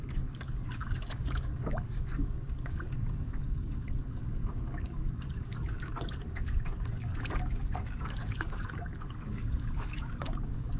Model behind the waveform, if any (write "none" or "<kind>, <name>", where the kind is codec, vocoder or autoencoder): codec, DAC